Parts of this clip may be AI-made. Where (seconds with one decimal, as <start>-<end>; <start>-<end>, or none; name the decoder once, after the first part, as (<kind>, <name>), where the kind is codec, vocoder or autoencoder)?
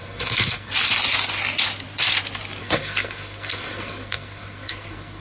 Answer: 0.0-0.7 (codec, SNAC); 2.6-5.2